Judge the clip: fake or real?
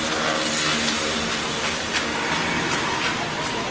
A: real